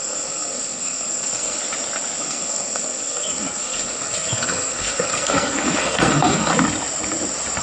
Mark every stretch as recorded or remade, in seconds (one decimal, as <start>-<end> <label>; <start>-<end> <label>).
0.0-1.6 remade; 1.6-2.2 recorded; 2.2-6.5 remade; 6.5-7.6 recorded